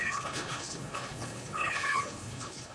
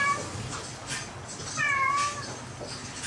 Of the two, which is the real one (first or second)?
second